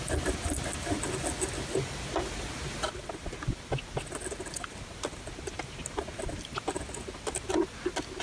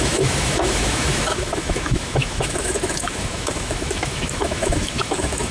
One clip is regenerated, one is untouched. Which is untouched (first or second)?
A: first